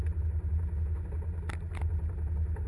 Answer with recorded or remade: recorded